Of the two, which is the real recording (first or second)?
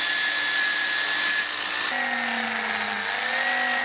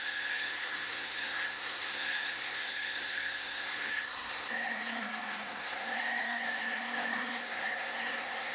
first